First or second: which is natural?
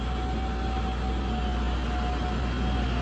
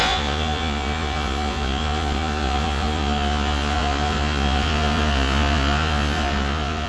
first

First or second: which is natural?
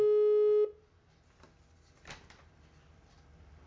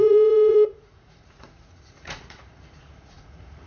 first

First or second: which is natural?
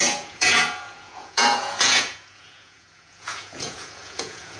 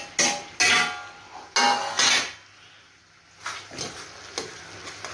second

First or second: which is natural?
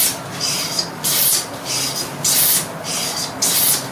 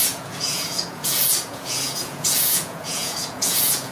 first